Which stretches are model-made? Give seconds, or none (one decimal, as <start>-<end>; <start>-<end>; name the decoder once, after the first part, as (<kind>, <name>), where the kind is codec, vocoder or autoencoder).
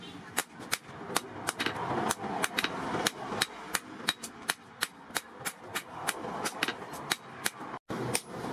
none